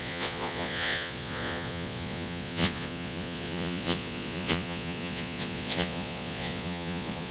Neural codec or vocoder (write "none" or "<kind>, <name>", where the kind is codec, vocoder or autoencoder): vocoder, Vocos